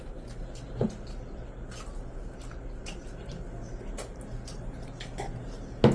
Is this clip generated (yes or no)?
no